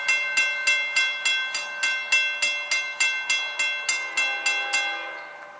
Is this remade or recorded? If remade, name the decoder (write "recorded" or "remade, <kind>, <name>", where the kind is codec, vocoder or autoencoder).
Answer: recorded